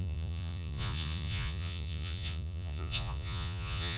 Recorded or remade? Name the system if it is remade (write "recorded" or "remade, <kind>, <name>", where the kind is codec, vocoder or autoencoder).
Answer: remade, vocoder, Vocos